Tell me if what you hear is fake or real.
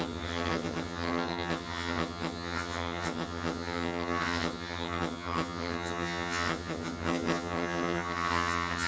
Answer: fake